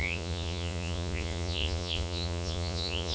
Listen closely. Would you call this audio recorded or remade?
remade